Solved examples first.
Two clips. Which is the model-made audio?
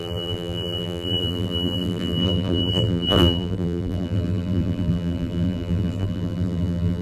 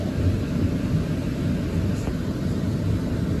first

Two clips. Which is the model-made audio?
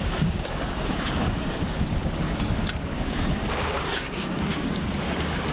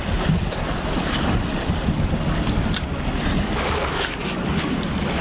first